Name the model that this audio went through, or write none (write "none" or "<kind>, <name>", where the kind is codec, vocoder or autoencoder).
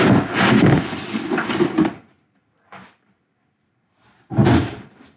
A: vocoder, BigVGAN v2